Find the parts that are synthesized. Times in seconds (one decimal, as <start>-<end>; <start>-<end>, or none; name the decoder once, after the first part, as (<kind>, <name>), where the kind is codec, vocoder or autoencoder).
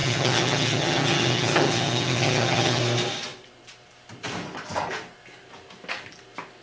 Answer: 0.0-2.8 (vocoder, HiFi-GAN)